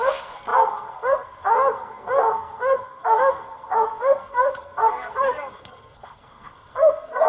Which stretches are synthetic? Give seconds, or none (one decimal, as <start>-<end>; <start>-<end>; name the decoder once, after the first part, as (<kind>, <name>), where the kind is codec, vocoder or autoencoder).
0.0-7.3 (codec, SNAC)

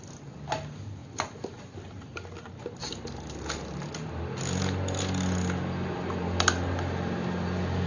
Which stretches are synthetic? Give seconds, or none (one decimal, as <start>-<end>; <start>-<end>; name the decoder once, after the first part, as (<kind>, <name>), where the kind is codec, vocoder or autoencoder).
none

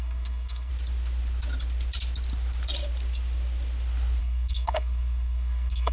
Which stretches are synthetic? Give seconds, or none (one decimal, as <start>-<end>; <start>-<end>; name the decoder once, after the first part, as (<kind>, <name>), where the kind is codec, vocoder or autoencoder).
0.0-0.7 (codec, SNAC); 4.2-5.9

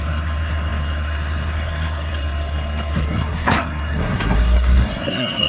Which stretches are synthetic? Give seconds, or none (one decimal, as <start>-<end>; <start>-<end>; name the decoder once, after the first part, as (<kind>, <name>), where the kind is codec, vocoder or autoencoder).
0.0-5.5 (codec, SNAC)

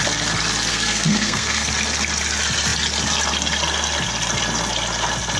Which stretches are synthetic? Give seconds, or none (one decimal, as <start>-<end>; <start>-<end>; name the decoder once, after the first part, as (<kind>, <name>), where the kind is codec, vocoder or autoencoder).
0.7-1.7 (codec, SNAC)

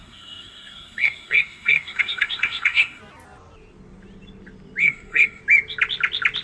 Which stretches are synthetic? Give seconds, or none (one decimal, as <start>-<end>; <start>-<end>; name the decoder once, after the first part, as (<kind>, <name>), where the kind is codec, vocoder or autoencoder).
0.0-3.0 (codec, SNAC); 4.8-5.4

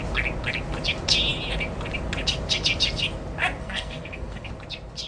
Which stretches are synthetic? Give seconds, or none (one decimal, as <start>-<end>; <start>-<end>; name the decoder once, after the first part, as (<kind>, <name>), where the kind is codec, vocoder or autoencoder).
3.6-4.5 (codec, SNAC)

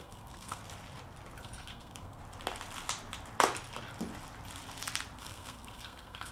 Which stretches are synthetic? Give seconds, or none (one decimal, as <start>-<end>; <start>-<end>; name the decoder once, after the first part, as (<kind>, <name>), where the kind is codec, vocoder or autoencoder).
0.0-0.6 (codec, SNAC); 1.4-2.2; 5.2-6.3